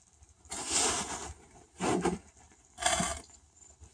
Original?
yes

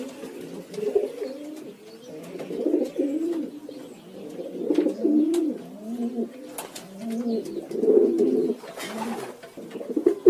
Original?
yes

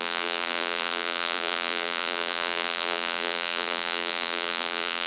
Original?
no